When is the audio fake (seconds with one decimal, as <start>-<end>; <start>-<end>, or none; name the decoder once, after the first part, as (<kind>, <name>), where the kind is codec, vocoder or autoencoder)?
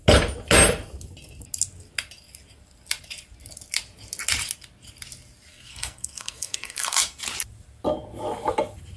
5.5-7.2 (codec, SNAC)